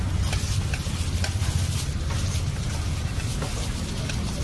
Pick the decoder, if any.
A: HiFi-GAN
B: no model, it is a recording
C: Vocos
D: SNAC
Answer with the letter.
B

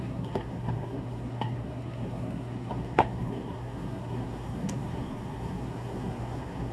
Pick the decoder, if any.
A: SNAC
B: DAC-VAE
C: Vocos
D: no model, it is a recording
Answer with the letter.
A